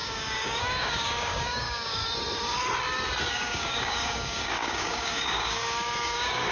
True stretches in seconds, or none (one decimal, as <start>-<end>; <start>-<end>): 2.0-3.3